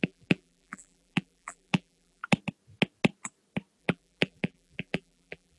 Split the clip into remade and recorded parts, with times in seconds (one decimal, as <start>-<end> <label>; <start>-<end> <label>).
0.0-2.2 remade; 2.2-3.8 recorded; 3.8-5.6 remade